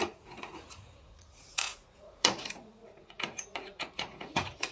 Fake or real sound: fake